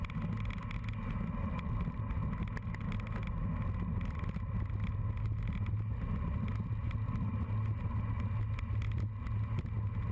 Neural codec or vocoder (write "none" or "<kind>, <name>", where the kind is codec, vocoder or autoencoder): none